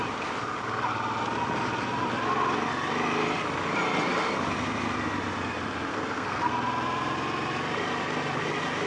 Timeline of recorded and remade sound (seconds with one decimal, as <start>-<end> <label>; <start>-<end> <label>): 0.0-5.9 recorded; 5.9-6.5 remade; 6.5-8.9 recorded